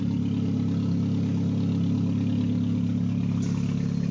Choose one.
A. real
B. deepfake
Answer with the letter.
A